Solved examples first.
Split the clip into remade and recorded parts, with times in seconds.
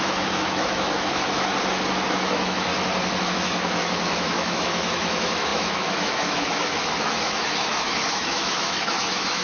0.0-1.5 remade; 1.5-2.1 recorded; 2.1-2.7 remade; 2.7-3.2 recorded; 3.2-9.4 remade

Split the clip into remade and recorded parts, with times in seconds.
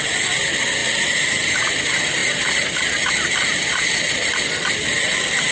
0.0-0.8 recorded; 0.8-1.7 remade; 1.7-5.5 recorded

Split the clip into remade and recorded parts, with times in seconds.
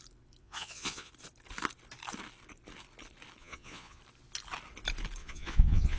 0.0-0.4 recorded; 0.4-1.1 remade; 1.1-3.4 recorded; 3.4-4.0 remade; 4.0-5.2 recorded; 5.2-6.0 remade